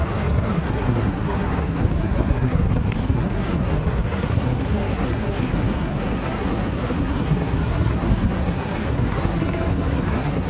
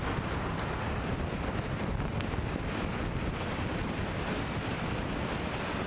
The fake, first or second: first